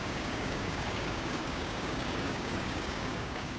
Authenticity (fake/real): fake